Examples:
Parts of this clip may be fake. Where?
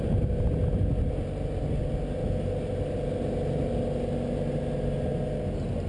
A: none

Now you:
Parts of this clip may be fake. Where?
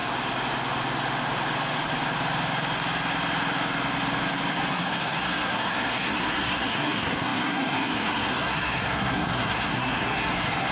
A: 4.7-10.7 (codec, SNAC)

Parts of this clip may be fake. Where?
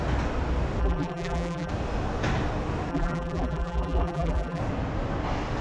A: 0.8-1.7 (vocoder, BigVGAN v2); 2.9-4.6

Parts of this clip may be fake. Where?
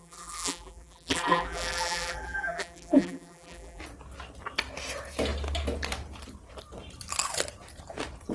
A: 0.0-3.8 (vocoder, BigVGAN v2)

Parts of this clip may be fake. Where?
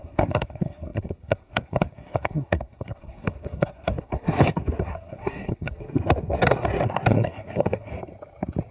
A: 0.0-7.9 (codec, SNAC)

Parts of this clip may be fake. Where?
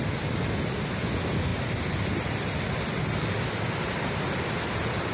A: 1.5-3.2 (vocoder, BigVGAN v2)